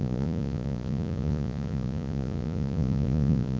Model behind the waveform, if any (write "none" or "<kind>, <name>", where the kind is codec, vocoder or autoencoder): vocoder, Vocos